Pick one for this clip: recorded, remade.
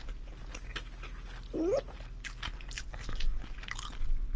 recorded